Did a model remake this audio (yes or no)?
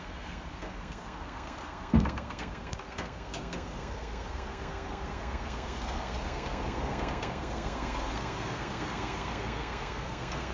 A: yes